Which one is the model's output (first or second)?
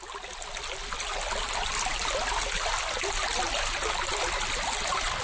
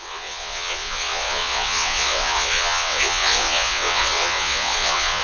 second